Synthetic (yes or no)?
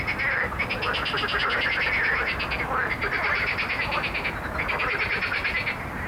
no